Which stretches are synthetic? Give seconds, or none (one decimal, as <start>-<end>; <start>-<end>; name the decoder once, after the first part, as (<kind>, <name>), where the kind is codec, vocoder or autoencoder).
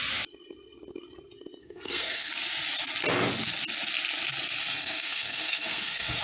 1.6-2.3 (codec, SNAC); 4.6-6.2